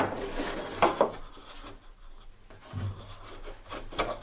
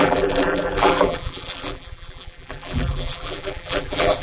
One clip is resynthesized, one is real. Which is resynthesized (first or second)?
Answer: second